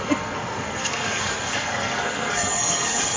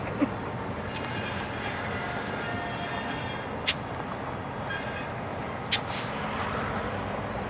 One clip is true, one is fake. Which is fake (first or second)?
first